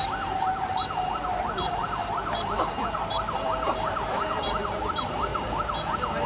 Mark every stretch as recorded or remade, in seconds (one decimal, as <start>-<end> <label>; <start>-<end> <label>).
0.0-5.3 remade; 5.3-6.3 recorded